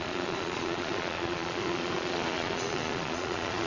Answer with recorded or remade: remade